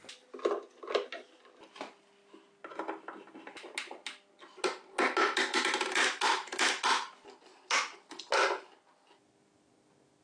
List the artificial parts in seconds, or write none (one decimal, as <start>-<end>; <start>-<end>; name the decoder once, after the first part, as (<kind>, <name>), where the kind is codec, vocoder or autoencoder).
none